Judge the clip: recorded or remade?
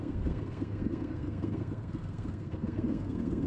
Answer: remade